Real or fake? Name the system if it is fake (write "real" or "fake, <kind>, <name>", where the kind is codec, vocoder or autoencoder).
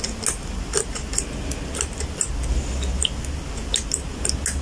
real